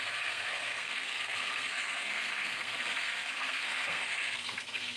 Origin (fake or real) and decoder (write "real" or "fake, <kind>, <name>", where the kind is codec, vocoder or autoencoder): fake, codec, SNAC